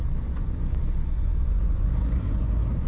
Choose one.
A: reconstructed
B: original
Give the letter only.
A